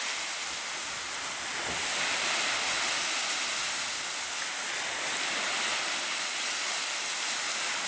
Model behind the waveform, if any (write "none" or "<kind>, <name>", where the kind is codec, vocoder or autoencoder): none